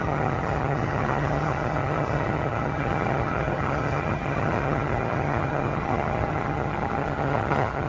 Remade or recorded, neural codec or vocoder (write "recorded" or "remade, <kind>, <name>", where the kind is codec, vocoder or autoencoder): remade, vocoder, HiFi-GAN